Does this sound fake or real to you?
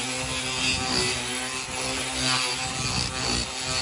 real